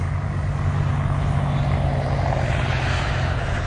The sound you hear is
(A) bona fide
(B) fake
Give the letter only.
A